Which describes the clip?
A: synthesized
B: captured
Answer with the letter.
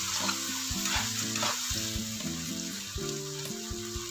B